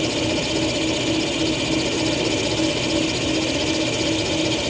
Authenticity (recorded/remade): recorded